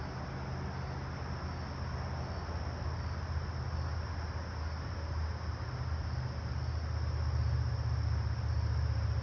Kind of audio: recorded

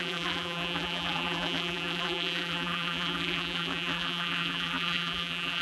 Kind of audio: remade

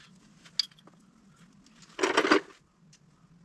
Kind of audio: recorded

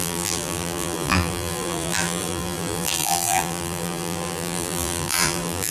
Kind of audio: remade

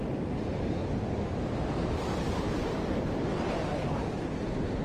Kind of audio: recorded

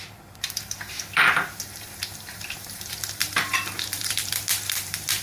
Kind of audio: remade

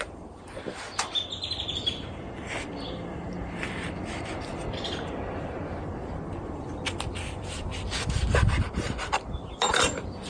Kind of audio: remade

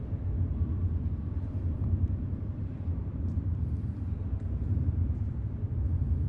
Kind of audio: remade